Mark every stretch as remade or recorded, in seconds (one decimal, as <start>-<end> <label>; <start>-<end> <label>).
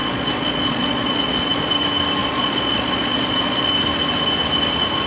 0.0-1.7 remade; 1.7-2.2 recorded; 2.2-3.7 remade; 3.7-5.1 recorded